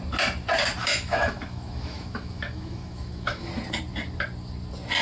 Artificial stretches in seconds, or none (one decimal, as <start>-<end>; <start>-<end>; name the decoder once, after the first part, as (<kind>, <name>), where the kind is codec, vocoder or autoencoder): 0.8-3.5 (autoencoder, DAC-VAE)